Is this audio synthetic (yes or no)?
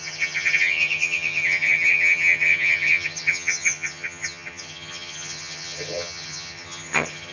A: yes